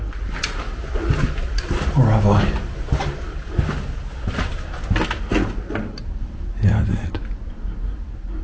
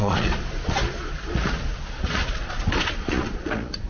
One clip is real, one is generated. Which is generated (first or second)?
second